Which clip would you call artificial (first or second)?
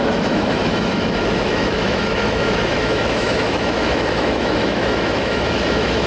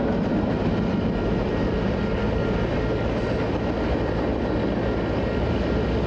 first